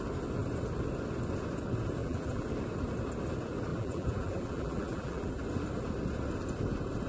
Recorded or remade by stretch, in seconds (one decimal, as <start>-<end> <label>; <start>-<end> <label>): 0.0-2.0 recorded; 2.0-2.5 remade; 2.5-3.7 recorded; 3.7-5.4 remade; 5.4-7.1 recorded